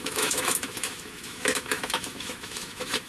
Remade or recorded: remade